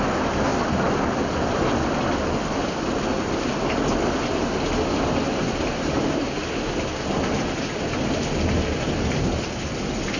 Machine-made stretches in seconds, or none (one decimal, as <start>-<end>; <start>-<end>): none